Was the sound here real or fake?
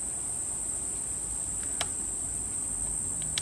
fake